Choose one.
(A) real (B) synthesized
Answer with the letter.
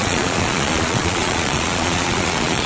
B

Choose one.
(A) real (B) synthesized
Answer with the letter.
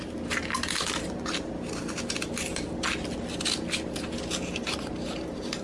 A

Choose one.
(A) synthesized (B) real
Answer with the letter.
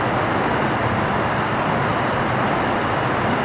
B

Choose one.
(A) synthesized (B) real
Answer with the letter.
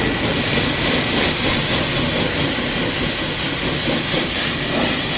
B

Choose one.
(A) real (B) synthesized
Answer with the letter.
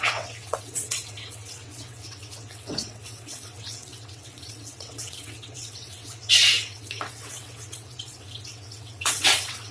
B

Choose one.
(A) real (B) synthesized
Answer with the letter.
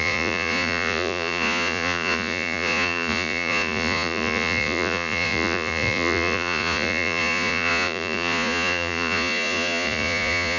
B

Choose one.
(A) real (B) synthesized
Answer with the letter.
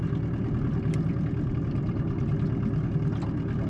A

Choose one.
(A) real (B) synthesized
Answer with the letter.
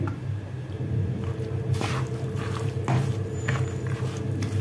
B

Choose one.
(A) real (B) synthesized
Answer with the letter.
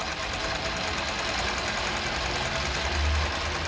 A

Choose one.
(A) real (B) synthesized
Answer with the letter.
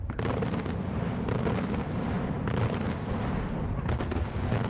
A